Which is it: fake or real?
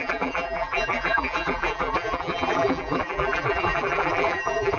fake